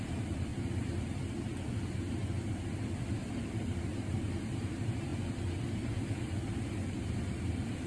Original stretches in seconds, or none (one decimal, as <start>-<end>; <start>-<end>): 0.5-3.3; 5.1-6.9